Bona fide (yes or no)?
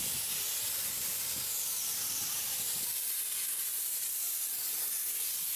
no